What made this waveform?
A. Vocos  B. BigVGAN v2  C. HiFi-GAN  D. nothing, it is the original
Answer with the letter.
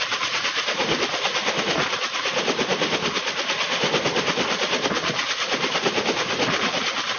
D